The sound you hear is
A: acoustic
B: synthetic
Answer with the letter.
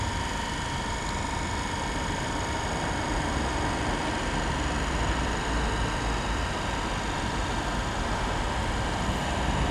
A